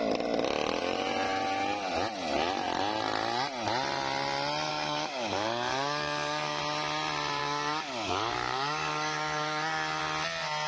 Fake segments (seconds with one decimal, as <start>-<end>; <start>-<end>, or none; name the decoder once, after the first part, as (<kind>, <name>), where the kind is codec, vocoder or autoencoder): 4.7-6.6 (codec, DAC); 7.4-10.0